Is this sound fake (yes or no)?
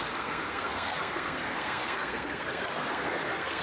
yes